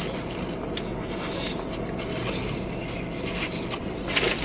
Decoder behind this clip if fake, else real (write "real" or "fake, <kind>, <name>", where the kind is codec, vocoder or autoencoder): real